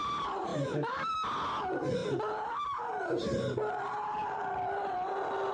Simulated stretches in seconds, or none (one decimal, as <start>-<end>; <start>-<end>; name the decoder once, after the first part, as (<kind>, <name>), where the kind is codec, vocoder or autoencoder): 0.5-1.1 (autoencoder, DAC-VAE)

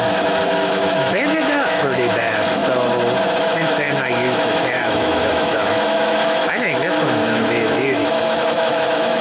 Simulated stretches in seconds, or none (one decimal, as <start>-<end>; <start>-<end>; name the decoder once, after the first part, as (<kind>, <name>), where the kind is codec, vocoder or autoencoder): 0.0-2.6 (autoencoder, DAC-VAE); 3.4-9.2